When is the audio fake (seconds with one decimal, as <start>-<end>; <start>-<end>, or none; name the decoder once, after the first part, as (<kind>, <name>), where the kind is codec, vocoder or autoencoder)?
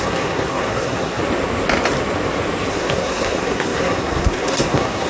0.0-1.2 (codec, SNAC); 2.7-5.1